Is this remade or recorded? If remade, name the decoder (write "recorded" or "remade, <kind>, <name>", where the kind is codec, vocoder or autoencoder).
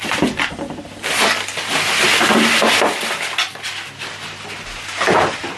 recorded